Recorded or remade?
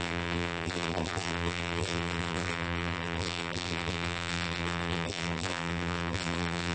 remade